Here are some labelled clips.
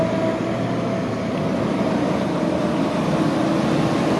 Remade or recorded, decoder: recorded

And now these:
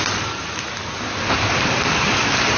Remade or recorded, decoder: recorded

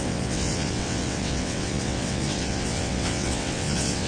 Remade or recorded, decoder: remade, vocoder, WaveNeXt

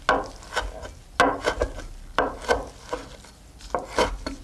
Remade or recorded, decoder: recorded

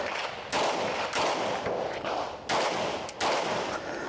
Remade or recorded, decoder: recorded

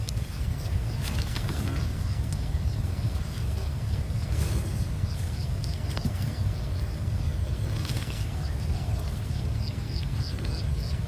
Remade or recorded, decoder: remade, codec, SNAC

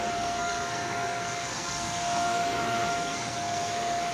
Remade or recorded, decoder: remade, codec, SNAC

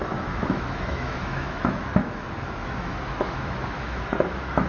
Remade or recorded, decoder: remade, autoencoder, DAC-VAE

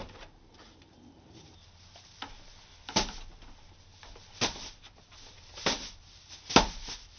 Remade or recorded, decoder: recorded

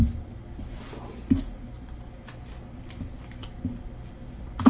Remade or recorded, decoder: recorded